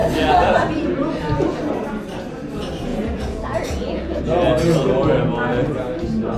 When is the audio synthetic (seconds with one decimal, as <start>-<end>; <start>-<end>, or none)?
2.9-4.2